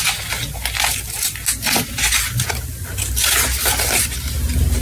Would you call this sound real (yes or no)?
yes